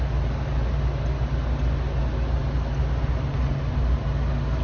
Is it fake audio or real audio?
real